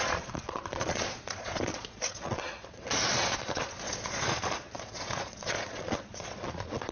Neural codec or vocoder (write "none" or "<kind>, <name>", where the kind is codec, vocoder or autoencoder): vocoder, Vocos